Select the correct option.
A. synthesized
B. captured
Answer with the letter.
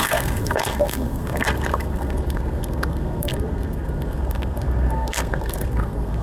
A